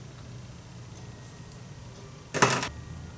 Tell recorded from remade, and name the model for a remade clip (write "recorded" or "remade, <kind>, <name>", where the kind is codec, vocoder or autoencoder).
recorded